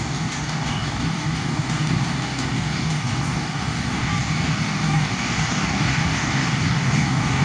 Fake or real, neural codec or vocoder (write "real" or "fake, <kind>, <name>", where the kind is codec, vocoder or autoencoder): fake, codec, DAC